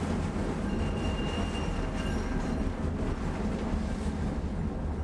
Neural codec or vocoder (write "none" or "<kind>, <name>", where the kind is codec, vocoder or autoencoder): none